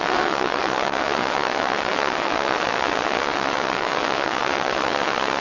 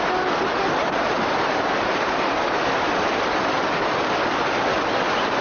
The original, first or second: second